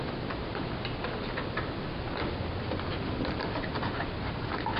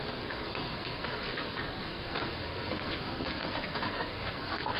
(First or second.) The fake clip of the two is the second